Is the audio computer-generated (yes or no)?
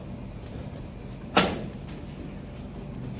no